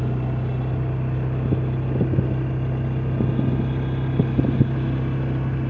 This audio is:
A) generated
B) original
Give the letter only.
B